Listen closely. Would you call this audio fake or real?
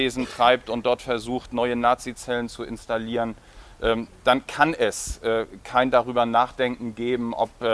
real